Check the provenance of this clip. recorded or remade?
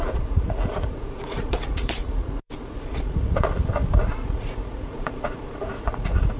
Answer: remade